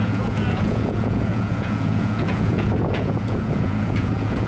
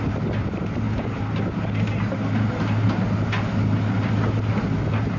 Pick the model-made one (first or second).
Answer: first